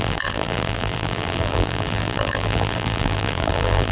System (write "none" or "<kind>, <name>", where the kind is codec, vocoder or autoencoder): vocoder, BigVGAN v2